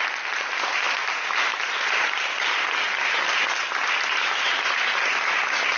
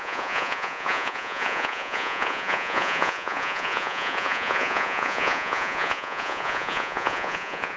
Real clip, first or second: first